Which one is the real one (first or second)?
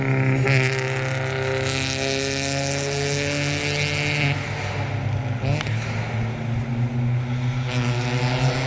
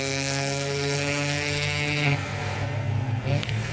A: first